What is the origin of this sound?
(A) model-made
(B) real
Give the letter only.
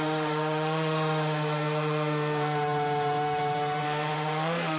A